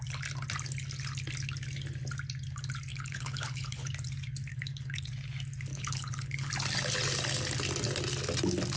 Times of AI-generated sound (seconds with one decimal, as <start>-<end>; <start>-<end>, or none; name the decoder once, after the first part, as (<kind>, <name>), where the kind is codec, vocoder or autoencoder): 2.9-3.9 (codec, HILCodec); 4.5-5.1; 5.7-6.5